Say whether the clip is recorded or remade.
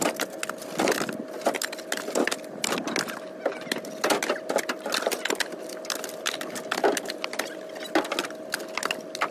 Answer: recorded